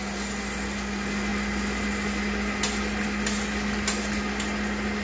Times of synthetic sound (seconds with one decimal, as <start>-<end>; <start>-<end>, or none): none